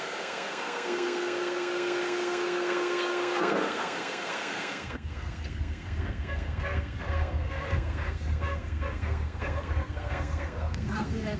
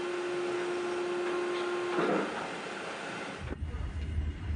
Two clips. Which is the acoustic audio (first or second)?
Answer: second